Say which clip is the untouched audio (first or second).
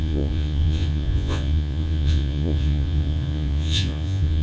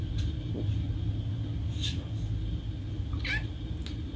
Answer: second